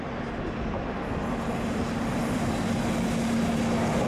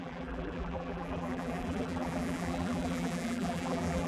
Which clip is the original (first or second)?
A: first